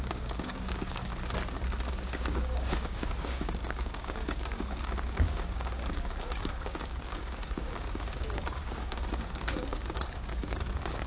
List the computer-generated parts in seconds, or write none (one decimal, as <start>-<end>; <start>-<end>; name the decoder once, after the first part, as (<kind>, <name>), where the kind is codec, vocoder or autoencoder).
0.0-1.1 (codec, DAC); 1.9-11.1